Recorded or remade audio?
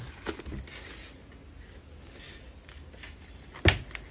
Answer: recorded